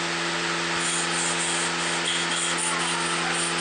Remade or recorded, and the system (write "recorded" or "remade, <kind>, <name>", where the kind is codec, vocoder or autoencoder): recorded